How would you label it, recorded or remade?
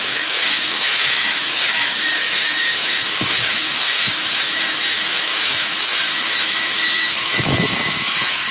remade